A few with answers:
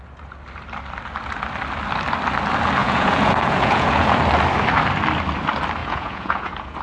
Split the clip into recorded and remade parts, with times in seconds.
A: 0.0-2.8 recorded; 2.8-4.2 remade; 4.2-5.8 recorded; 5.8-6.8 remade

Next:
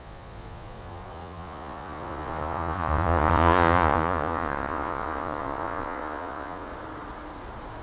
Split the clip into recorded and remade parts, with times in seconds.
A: 0.0-6.7 remade; 6.7-7.8 recorded

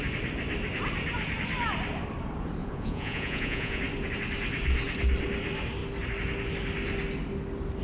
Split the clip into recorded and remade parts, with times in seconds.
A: 0.0-2.6 recorded; 2.6-3.8 remade; 3.8-7.8 recorded

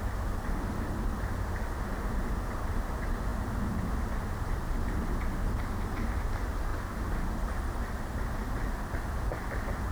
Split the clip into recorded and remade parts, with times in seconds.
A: 0.0-9.9 recorded

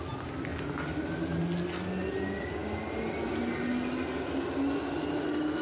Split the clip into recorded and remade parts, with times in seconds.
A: 0.0-5.6 recorded

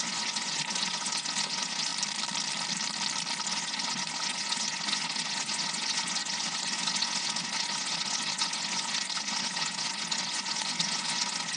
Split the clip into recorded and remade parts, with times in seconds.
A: 0.0-1.9 remade; 1.9-3.5 recorded; 3.5-11.6 remade